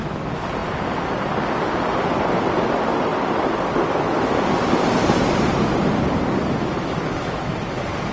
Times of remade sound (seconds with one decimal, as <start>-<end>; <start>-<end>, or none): none